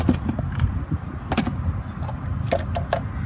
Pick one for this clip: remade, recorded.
recorded